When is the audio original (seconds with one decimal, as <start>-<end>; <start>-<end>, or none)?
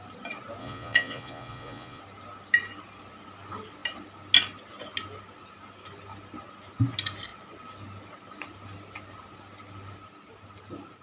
0.0-0.6; 2.0-11.0